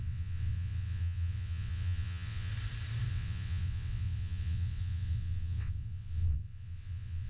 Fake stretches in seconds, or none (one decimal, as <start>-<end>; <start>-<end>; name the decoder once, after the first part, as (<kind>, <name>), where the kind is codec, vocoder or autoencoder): 0.0-2.5 (vocoder, WaveNeXt); 3.1-7.3